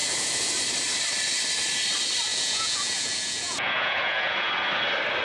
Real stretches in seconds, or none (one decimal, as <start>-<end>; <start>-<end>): 0.5-2.3; 4.5-5.2